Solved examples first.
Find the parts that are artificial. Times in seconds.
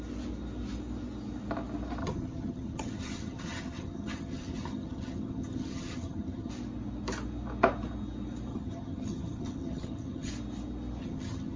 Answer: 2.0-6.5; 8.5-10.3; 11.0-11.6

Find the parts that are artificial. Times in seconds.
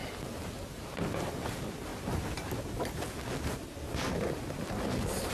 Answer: none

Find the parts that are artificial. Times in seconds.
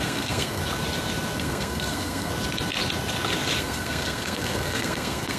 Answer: 0.0-0.6; 1.4-2.3; 3.6-5.4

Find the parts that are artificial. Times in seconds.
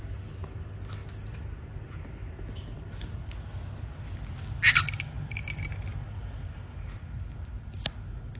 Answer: none